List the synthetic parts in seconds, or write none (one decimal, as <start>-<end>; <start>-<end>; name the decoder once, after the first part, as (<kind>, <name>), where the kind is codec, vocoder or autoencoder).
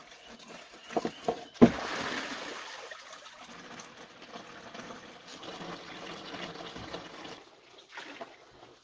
none